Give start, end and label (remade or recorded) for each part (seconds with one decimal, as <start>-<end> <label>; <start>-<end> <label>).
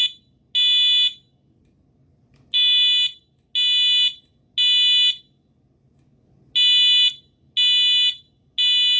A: 0.0-9.0 recorded